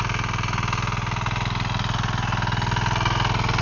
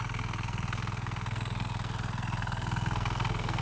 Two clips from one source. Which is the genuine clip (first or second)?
first